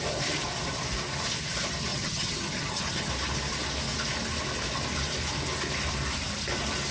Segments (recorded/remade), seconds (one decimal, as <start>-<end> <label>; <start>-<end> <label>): 0.0-1.9 recorded; 1.9-3.1 remade; 3.1-6.9 recorded